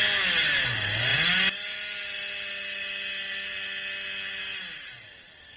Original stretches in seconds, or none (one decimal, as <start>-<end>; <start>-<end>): 0.0-5.6